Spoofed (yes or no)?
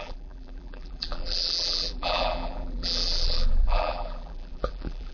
yes